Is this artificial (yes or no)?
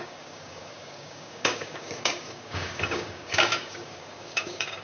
yes